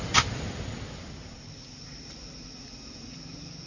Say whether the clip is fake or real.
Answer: real